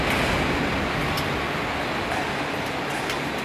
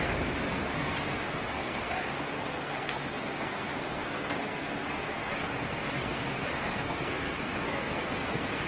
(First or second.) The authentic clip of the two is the first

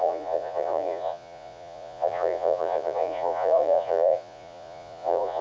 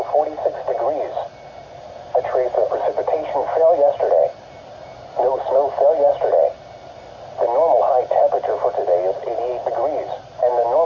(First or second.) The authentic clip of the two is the second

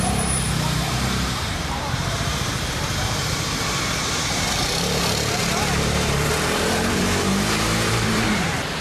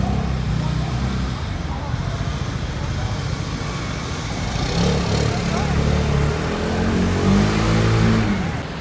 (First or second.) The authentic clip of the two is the second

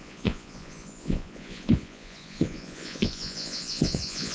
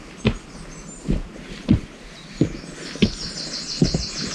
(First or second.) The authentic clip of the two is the second